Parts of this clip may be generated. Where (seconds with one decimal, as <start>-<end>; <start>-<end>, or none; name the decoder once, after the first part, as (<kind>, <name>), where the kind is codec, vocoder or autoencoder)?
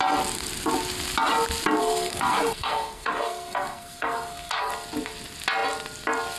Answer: 1.8-4.7 (codec, SNAC)